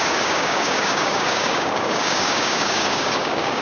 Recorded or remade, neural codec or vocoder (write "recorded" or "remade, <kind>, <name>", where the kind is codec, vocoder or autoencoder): remade, codec, DAC